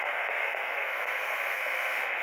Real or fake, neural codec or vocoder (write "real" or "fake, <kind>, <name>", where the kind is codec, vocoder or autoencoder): fake, codec, SNAC